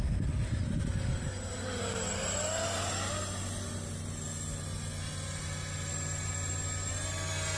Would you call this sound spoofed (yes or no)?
yes